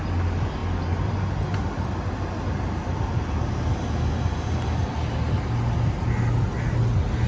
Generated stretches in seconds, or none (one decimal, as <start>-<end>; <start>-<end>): none